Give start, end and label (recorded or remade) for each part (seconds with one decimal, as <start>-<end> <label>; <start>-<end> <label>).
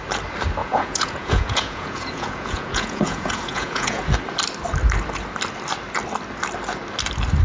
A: 0.0-0.6 recorded; 0.6-4.0 remade; 4.0-7.4 recorded